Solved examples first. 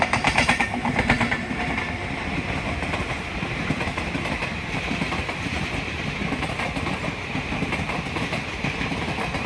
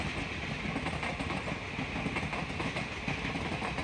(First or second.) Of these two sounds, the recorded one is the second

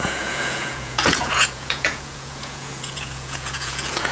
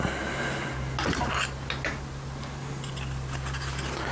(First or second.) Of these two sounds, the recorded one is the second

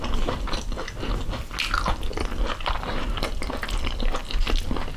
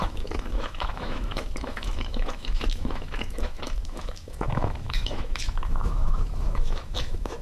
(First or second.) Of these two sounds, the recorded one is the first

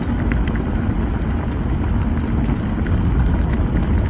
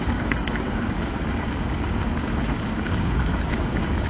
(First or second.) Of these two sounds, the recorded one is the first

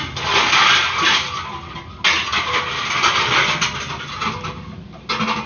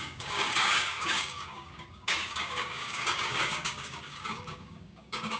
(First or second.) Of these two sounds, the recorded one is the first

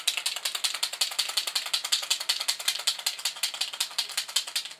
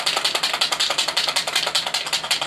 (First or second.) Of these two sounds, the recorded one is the first